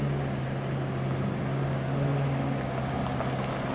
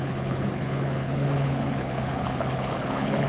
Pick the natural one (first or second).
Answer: first